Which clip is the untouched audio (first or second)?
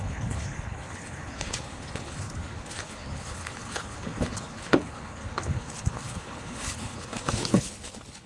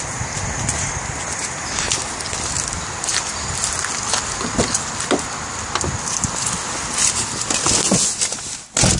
second